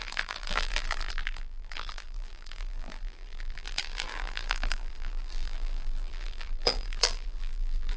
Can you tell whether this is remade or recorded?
remade